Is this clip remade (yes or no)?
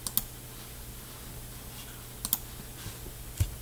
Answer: no